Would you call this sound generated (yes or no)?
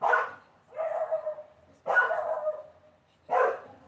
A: no